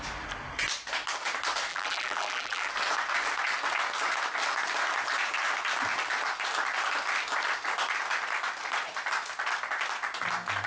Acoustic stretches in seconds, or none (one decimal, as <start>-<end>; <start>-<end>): 0.0-1.7; 2.7-10.7